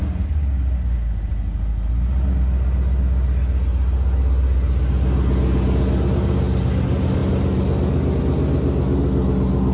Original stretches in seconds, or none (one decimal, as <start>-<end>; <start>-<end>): 0.0-9.7